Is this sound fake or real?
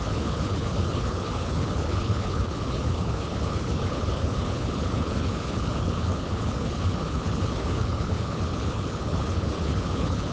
fake